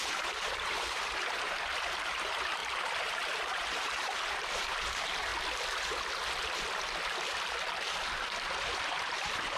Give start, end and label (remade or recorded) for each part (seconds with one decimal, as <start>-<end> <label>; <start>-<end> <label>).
0.0-5.3 remade; 5.3-8.5 recorded; 8.5-9.6 remade